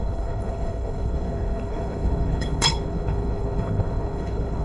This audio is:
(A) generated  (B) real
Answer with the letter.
A